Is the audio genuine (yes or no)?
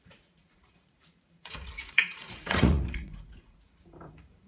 no